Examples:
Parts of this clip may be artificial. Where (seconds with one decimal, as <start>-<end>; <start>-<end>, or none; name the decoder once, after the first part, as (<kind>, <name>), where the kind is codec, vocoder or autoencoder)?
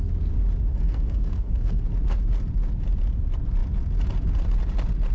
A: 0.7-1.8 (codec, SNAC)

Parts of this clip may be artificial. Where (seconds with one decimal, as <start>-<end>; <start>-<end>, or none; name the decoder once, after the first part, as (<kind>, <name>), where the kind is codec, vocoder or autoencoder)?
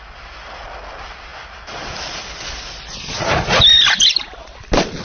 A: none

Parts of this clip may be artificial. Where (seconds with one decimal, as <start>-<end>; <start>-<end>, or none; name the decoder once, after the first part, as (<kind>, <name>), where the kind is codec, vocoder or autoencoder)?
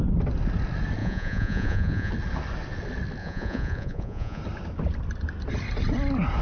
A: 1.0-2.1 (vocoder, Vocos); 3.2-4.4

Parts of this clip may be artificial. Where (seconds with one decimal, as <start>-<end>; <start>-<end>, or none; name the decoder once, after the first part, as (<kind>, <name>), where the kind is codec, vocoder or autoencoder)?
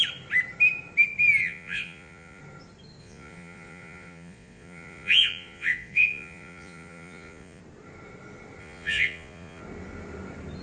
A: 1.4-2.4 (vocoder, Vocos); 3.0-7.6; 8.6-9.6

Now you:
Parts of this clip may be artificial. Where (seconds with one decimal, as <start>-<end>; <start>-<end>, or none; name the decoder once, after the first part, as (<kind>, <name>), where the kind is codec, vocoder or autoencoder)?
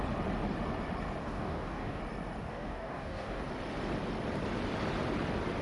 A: 1.2-2.0 (codec, DAC); 2.4-3.4